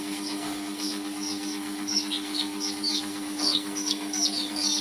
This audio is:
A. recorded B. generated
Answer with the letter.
B